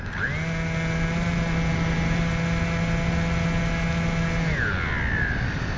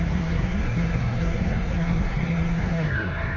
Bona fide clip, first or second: first